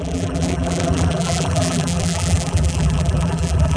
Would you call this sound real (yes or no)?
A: no